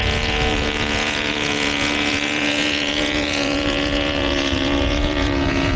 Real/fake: fake